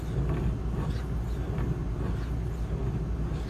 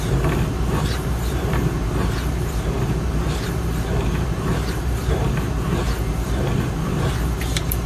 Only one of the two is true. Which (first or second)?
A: first